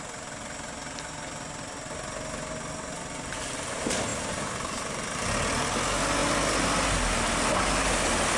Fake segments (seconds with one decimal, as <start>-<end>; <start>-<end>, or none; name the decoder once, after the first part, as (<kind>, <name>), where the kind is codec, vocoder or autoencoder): 4.1-5.0 (vocoder, BigVGAN v2)